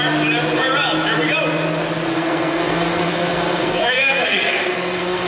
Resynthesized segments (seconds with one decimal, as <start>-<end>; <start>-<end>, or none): 2.1-5.3